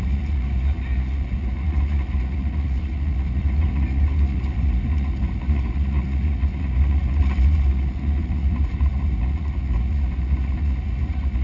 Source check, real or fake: fake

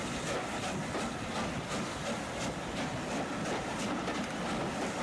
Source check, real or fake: real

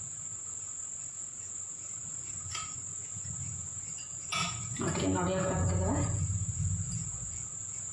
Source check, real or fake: fake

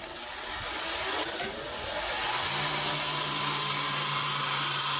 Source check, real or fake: real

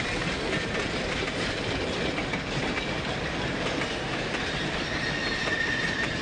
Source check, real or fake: real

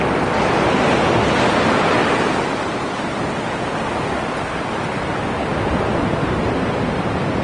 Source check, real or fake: real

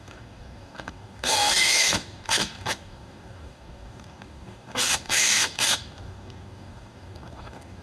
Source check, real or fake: fake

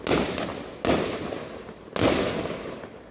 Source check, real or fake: real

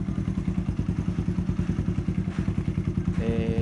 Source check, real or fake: real